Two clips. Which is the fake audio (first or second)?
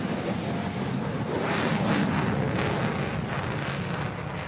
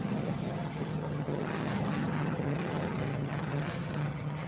second